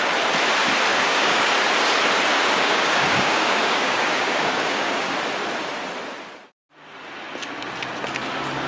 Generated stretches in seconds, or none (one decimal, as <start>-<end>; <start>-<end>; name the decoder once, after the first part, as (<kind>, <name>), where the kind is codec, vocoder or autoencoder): 0.9-1.5 (codec, DAC); 2.3-5.1